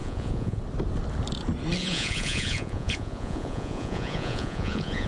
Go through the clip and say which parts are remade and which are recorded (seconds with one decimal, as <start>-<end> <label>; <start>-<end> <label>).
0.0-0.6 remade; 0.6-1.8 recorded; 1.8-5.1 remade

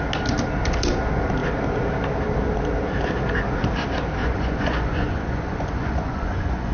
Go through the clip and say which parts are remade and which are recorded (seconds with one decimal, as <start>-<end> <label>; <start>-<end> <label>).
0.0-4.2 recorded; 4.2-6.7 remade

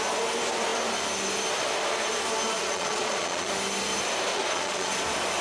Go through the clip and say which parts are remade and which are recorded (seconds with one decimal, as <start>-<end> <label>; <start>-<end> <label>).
0.0-2.6 recorded; 2.6-3.5 remade; 3.5-4.3 recorded; 4.3-4.9 remade; 4.9-5.4 recorded

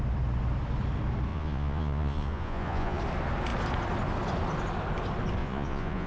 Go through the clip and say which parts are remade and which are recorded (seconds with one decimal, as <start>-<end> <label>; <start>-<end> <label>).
0.0-1.3 recorded; 1.3-3.0 remade; 3.0-5.4 recorded; 5.4-6.1 remade

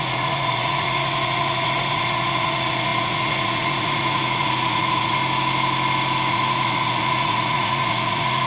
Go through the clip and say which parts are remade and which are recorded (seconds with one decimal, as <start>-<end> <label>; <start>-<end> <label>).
0.0-5.2 remade; 5.2-6.3 recorded; 6.3-8.5 remade